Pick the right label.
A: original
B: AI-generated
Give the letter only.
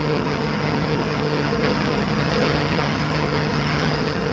B